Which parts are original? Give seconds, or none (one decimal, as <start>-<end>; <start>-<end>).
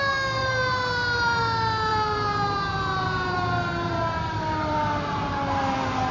0.0-0.4; 1.4-1.9; 5.6-6.1